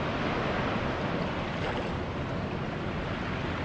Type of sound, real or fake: real